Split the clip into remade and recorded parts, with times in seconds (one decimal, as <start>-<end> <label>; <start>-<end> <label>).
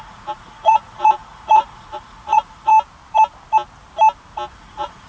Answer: 0.0-2.7 remade; 2.7-4.5 recorded; 4.5-5.1 remade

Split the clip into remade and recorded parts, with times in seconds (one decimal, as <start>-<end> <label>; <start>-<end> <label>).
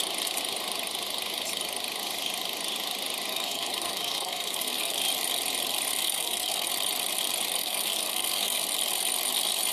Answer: 0.0-3.3 recorded; 3.3-5.0 remade; 5.0-6.0 recorded; 6.0-6.7 remade; 6.7-7.6 recorded; 7.6-8.6 remade; 8.6-9.7 recorded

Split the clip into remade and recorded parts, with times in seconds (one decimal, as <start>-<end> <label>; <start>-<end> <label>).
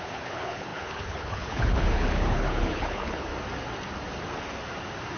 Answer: 0.0-3.3 remade; 3.3-5.2 recorded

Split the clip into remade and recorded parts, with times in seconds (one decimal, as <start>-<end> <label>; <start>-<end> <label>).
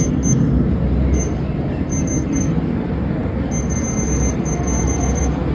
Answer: 0.0-5.5 recorded